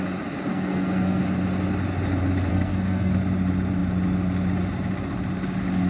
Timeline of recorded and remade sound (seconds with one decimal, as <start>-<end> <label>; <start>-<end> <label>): 0.0-0.5 recorded; 0.5-1.2 remade; 1.2-2.5 recorded; 2.5-3.1 remade; 3.1-5.9 recorded